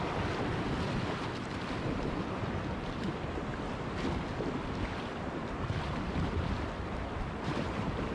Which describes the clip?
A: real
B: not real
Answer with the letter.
B